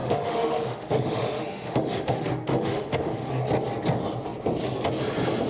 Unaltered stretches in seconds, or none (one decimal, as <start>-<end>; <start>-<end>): 3.3-5.5